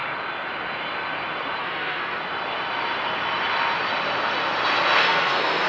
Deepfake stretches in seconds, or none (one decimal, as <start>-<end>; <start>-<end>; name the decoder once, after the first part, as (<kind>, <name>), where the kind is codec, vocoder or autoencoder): 1.6-2.2 (codec, SNAC); 5.0-5.7